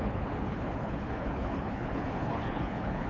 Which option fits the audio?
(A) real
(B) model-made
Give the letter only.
B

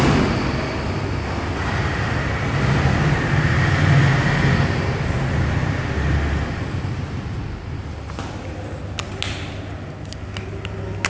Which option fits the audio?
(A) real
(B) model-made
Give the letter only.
A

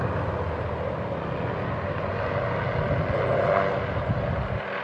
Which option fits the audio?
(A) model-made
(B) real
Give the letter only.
B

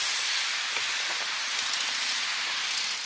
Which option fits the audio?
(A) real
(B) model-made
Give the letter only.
A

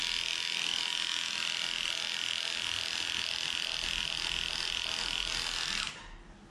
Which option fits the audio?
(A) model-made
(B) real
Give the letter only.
B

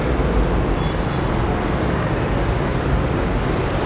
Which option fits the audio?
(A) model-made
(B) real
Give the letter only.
B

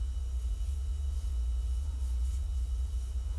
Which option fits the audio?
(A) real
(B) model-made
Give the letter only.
B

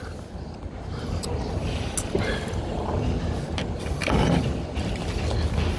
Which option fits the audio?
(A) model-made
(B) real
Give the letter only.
B